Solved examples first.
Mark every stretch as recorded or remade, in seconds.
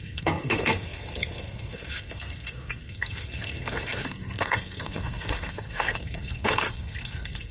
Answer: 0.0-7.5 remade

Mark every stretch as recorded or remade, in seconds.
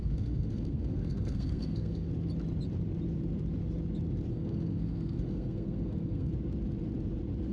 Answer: 0.0-2.1 remade; 2.1-4.3 recorded; 4.3-6.3 remade; 6.3-7.5 recorded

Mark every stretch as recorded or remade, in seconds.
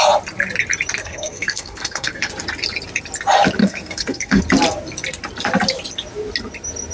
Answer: 0.0-1.0 recorded; 1.0-2.3 remade; 2.3-3.6 recorded; 3.6-4.4 remade; 4.4-6.9 recorded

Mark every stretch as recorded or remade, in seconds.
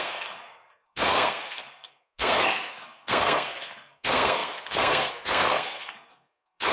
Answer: 0.0-6.7 remade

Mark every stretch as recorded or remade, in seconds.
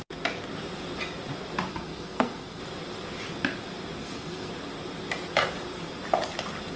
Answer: 0.0-1.7 recorded; 1.7-2.6 remade; 2.6-4.0 recorded; 4.0-4.5 remade; 4.5-6.8 recorded